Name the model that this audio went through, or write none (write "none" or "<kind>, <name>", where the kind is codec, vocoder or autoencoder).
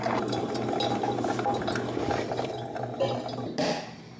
none